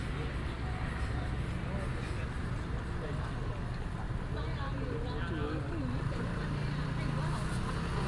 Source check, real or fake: real